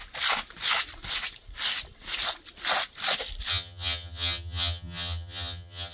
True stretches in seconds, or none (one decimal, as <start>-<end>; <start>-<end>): 0.0-3.5